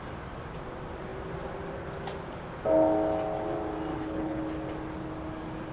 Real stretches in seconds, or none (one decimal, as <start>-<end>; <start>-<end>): 0.0-3.9; 4.4-5.7

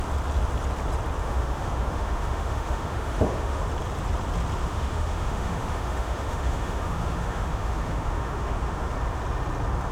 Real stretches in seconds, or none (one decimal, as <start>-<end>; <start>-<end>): 0.0-1.2; 3.6-4.6; 8.9-9.9

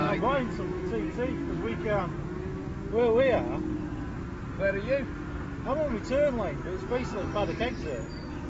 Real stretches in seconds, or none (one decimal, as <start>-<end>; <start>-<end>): 2.0-6.8; 7.6-8.5

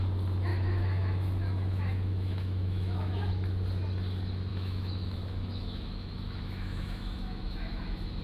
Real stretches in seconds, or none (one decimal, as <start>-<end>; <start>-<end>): 0.0-0.5; 3.3-4.5

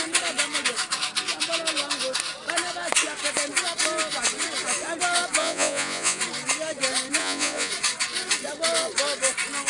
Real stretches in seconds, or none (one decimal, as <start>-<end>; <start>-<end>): 0.0-5.4; 6.2-7.2; 7.7-9.7

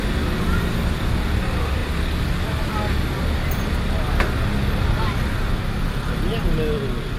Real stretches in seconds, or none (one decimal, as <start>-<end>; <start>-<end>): 0.0-7.2

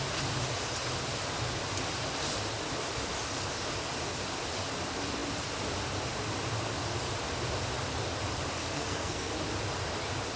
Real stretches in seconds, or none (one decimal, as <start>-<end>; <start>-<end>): 0.0-8.6; 9.3-10.4